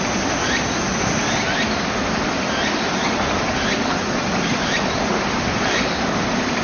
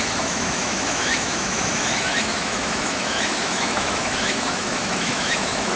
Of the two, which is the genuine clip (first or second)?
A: first